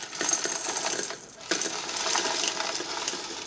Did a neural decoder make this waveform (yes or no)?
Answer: no